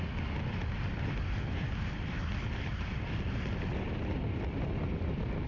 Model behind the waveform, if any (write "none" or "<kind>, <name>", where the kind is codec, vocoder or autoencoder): none